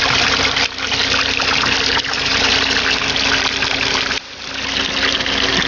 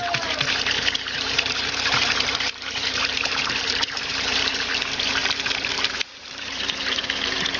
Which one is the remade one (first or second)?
second